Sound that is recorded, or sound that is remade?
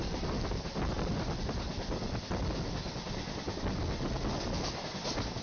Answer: recorded